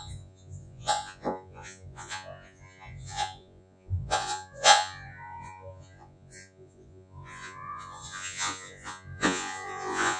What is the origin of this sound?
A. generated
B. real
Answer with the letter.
A